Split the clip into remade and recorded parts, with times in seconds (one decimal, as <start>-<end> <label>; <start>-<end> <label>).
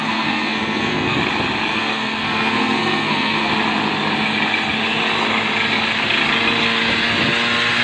0.0-1.2 remade; 1.2-1.7 recorded; 1.7-3.5 remade; 3.5-7.8 recorded